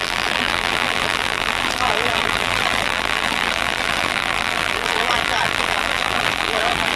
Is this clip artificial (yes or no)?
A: yes